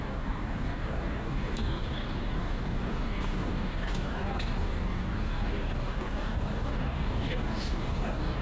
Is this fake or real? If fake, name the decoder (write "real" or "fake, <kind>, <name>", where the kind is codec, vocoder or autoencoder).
fake, codec, DAC